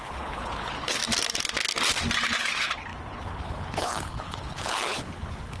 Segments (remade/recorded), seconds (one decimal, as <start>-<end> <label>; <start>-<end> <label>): 0.0-1.0 remade; 1.0-2.4 recorded; 2.4-5.6 remade